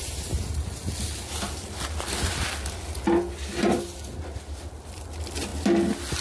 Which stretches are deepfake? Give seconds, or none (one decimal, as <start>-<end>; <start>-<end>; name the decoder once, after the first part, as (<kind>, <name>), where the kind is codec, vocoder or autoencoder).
none

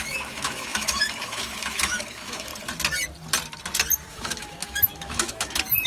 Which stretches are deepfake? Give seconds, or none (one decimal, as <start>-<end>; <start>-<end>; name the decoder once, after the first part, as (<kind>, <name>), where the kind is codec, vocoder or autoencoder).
0.0-2.5 (autoencoder, DAC-VAE); 4.1-5.9

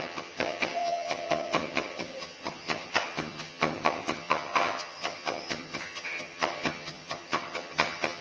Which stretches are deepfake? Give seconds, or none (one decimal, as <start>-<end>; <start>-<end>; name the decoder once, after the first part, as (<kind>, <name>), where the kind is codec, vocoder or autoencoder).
0.0-8.2 (vocoder, HiFi-GAN)

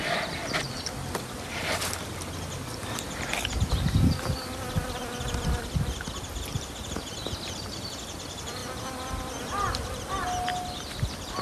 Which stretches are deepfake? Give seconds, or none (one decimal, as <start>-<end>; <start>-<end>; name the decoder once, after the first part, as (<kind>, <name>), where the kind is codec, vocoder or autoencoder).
none